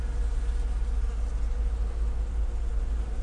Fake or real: real